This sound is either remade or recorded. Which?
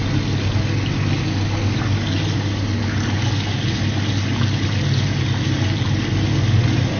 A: recorded